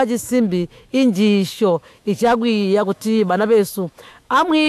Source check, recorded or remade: remade